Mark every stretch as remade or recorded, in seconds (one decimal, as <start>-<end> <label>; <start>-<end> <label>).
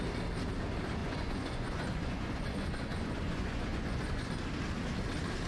0.0-1.0 recorded; 1.0-4.3 remade; 4.3-5.5 recorded